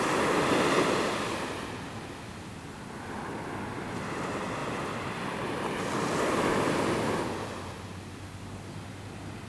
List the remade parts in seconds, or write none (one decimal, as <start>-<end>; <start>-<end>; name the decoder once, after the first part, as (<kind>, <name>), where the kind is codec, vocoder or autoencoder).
4.6-6.2 (vocoder, BigVGAN v2)